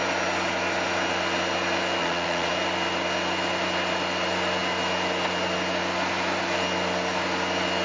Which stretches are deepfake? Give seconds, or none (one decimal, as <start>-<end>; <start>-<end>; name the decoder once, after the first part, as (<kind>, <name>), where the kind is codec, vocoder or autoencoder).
2.0-2.5 (vocoder, Vocos)